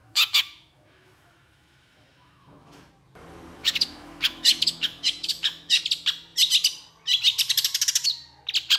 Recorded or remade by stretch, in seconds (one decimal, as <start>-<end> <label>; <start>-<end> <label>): 0.0-2.9 remade; 2.9-3.6 recorded; 3.6-5.8 remade; 5.8-8.8 recorded